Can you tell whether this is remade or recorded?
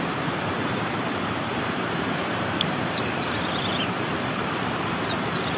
remade